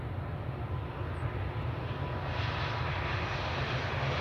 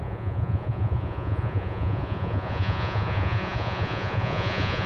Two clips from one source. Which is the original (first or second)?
first